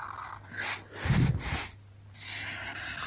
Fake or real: real